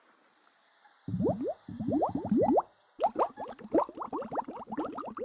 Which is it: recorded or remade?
recorded